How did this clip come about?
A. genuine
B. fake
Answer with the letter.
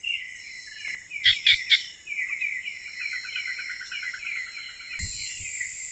A